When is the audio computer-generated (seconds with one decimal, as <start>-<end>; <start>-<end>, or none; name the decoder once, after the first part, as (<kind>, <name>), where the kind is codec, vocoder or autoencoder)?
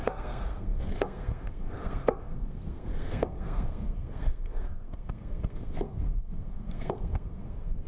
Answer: 0.0-7.9 (codec, SNAC)